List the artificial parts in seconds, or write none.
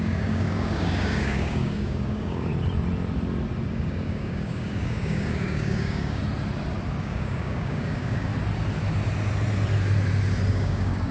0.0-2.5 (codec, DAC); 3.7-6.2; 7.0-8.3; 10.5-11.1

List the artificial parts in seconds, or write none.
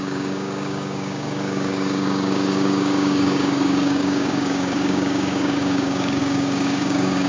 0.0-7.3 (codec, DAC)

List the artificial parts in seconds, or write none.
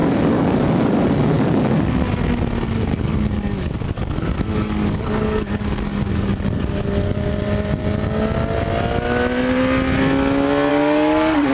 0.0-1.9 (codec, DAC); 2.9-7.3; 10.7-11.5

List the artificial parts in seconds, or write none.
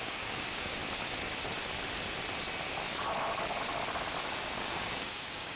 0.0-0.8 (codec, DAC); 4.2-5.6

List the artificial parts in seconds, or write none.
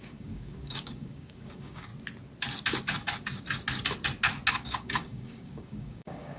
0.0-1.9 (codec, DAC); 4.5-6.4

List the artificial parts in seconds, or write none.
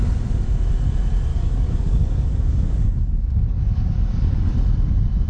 1.3-4.5 (codec, DAC)